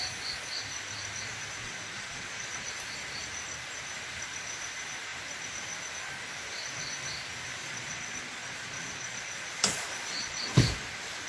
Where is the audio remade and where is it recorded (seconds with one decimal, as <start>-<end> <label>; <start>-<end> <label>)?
0.0-1.6 recorded; 1.6-2.7 remade; 2.7-7.6 recorded; 7.6-10.5 remade; 10.5-11.3 recorded